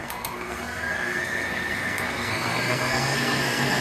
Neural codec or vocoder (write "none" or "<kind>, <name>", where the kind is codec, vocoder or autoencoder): codec, SNAC